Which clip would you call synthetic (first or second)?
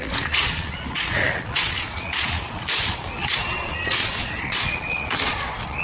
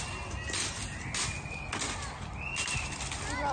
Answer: first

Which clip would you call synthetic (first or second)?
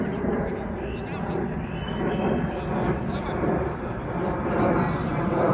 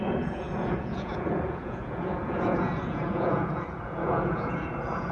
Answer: second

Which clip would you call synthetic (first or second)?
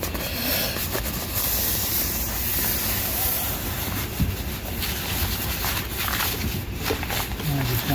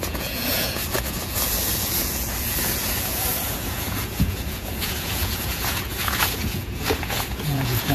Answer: second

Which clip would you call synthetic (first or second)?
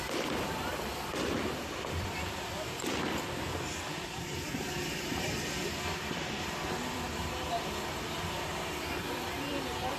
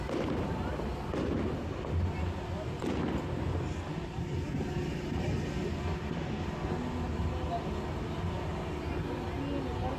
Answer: first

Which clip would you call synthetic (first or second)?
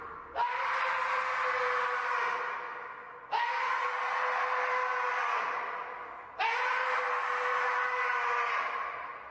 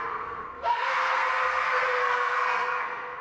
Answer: second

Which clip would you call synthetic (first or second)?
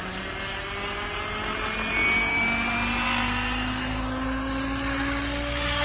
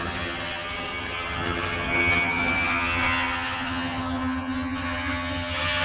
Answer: second